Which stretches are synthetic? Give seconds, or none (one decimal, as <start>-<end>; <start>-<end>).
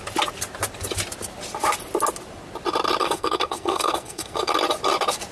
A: 3.0-4.5